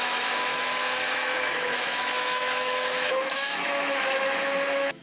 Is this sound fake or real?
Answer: fake